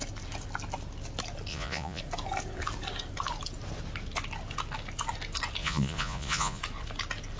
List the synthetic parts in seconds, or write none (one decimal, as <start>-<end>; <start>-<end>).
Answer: 1.5-2.0; 5.6-6.6